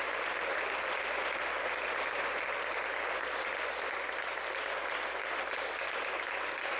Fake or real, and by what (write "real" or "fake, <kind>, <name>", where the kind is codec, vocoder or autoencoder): real